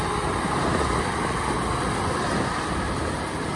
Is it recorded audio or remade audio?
recorded